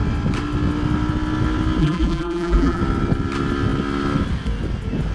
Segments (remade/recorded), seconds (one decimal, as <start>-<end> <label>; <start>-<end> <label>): 0.0-1.8 recorded; 1.8-2.8 remade; 2.8-5.1 recorded

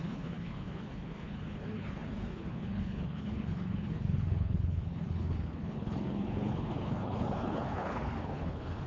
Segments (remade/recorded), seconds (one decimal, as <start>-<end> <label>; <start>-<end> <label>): 0.0-8.9 remade